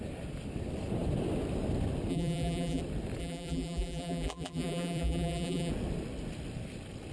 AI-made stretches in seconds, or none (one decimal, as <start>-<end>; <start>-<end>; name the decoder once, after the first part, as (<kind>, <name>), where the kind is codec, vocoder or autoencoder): 2.1-2.8 (vocoder, BigVGAN v2); 3.2-5.7